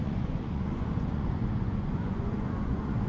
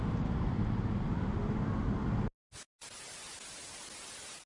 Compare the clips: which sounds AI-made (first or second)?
first